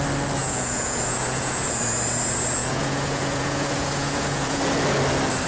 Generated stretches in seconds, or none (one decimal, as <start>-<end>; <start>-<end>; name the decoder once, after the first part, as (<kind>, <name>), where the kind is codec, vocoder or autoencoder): 0.4-1.8 (vocoder, Vocos); 2.6-4.6